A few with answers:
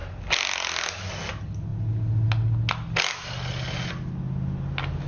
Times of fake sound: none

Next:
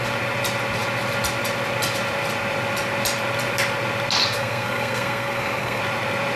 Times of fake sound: 4.2-5.8 (codec, SNAC)

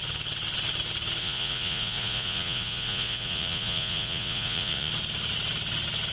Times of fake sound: 1.2-4.9 (vocoder, Vocos)

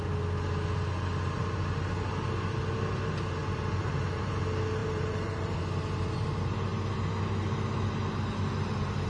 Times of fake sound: 3.4-4.3 (vocoder, BigVGAN v2); 4.8-5.6

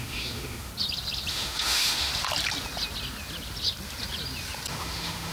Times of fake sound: 0.0-0.7 (autoencoder, DAC-VAE); 1.3-2.1; 4.7-5.3

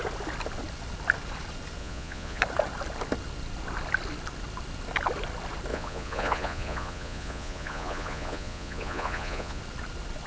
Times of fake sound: 1.8-2.4 (vocoder, Vocos); 5.7-9.6

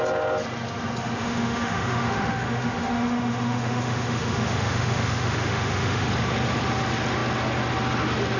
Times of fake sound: 1.2-6.1 (autoencoder, DAC-VAE)

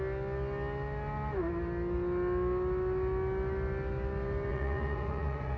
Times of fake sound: 4.5-5.6 (vocoder, Vocos)